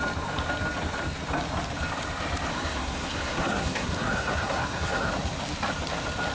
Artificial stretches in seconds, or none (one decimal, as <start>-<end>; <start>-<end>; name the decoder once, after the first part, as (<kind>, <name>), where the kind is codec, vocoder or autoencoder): 2.5-5.1 (codec, SNAC)